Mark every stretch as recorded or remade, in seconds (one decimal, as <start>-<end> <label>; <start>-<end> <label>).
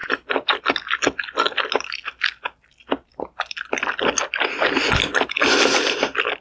0.0-6.4 recorded